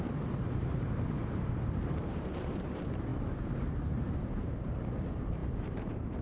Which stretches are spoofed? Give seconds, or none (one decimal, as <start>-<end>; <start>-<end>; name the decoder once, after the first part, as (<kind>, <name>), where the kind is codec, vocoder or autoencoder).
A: 0.0-3.1 (vocoder, BigVGAN v2); 4.3-6.2